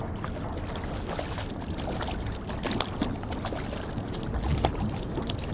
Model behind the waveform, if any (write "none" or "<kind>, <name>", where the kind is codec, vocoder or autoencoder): none